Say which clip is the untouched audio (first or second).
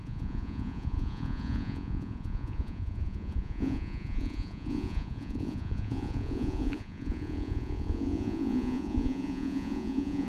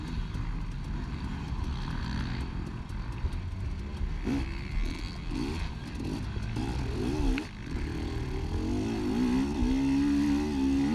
second